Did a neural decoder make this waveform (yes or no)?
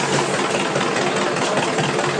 no